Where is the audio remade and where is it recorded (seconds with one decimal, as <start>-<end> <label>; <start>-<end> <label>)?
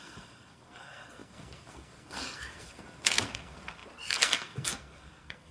0.0-5.5 remade